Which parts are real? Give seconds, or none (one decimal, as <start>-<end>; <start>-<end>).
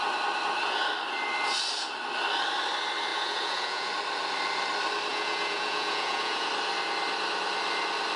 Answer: 0.0-3.1; 3.9-5.1; 6.5-8.2